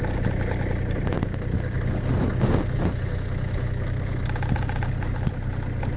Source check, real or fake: real